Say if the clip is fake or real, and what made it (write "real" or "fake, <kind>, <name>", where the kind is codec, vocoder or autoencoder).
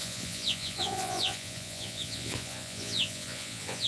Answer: fake, vocoder, Vocos